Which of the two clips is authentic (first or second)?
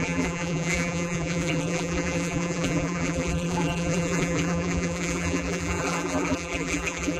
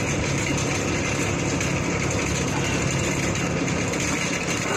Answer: second